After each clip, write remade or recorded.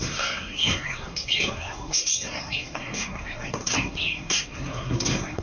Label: remade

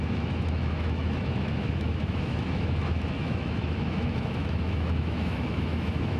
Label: remade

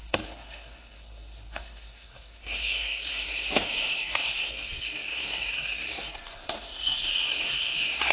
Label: remade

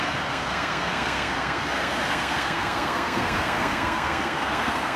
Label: remade